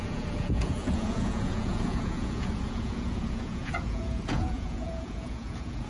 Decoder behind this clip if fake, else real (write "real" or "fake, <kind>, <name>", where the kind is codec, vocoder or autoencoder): fake, vocoder, Vocos